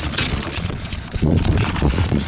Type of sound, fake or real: fake